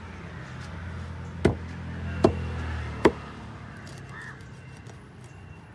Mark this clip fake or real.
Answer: real